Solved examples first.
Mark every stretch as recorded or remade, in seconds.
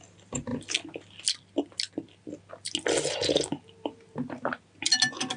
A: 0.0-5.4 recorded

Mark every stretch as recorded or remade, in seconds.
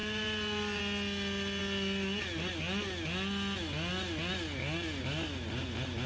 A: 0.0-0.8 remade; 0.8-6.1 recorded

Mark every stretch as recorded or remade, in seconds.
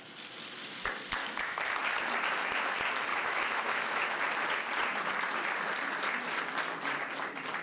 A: 0.0-1.2 recorded; 1.2-1.7 remade; 1.7-3.1 recorded; 3.1-4.2 remade; 4.2-7.6 recorded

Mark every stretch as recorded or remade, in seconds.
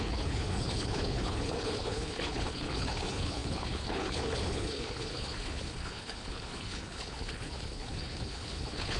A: 0.0-9.0 remade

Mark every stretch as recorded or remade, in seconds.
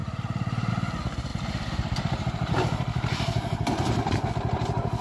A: 0.0-0.7 remade; 0.7-1.3 recorded; 1.3-4.3 remade; 4.3-5.0 recorded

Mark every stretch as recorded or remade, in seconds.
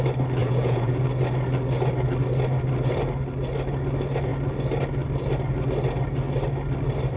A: 0.0-0.4 recorded; 0.4-1.0 remade; 1.0-7.2 recorded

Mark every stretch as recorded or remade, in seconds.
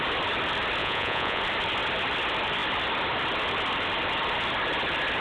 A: 0.0-0.8 recorded; 0.8-1.4 remade; 1.4-5.2 recorded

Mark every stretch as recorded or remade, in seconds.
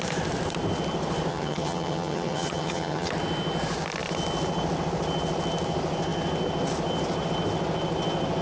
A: 0.0-1.3 recorded; 1.3-3.1 remade; 3.1-8.4 recorded